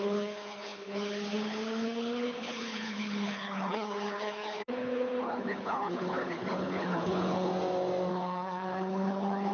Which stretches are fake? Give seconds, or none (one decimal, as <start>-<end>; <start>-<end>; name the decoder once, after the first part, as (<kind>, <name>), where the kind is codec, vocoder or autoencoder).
0.0-7.5 (codec, HILCodec); 8.1-9.5